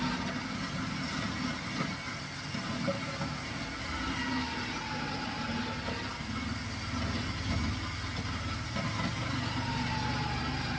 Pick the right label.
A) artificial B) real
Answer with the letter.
B